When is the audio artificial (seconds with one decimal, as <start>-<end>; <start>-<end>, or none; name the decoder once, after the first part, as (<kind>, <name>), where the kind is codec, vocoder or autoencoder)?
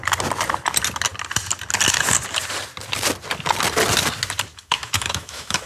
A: 4.5-5.7 (autoencoder, DAC-VAE)